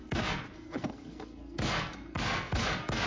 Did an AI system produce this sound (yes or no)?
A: yes